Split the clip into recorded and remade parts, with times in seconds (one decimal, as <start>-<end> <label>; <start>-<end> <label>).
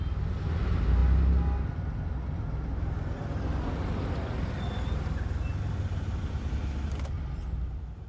0.0-8.1 recorded